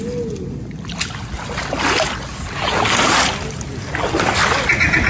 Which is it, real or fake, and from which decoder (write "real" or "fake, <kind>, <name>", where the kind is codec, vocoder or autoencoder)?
real